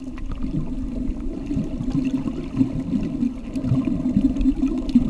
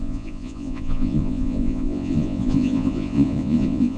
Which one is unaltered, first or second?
first